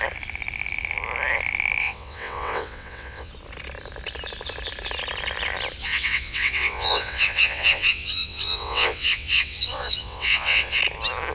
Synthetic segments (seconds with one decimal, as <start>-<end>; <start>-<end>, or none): 1.8-3.3; 5.8-10.8

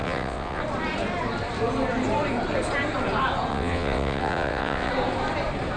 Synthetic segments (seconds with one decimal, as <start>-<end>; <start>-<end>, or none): 0.0-0.6; 3.5-4.9